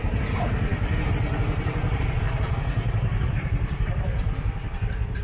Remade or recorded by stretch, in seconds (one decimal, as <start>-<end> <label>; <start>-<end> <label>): 0.0-5.2 remade